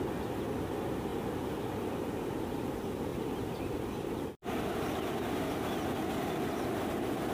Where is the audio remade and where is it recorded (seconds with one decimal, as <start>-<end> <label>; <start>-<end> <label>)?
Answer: 0.0-1.1 recorded; 1.1-2.6 remade; 2.6-3.1 recorded; 3.1-6.7 remade; 6.7-7.3 recorded